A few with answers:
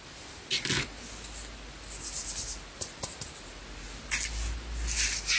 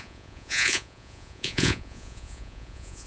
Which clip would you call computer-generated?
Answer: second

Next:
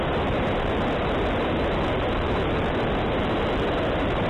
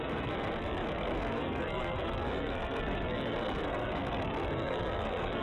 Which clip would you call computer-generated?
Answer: second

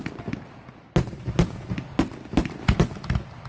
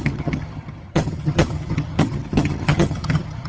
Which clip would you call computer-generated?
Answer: second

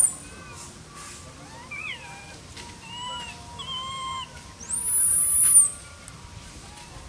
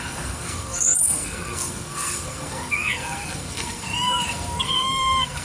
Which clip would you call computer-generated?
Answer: second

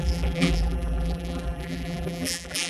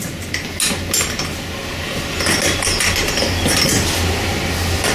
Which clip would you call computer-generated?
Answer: first